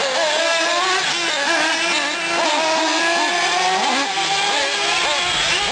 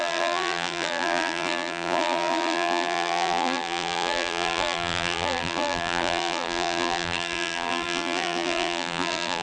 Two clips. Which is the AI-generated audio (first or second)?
second